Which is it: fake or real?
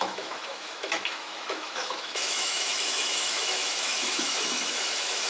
fake